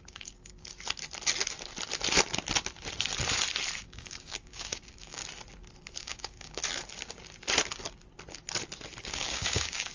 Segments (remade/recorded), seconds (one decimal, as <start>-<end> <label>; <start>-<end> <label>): 0.0-0.7 remade; 0.7-3.8 recorded; 3.8-5.2 remade; 5.2-6.0 recorded; 6.0-6.6 remade; 6.6-9.0 recorded; 9.0-9.9 remade